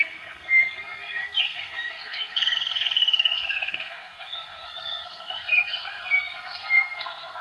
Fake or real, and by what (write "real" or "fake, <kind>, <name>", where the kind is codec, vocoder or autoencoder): fake, codec, SNAC